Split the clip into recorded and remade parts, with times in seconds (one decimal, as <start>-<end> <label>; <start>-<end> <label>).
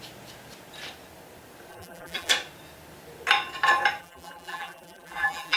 0.0-1.7 recorded; 1.7-2.3 remade; 2.3-4.0 recorded; 4.0-5.6 remade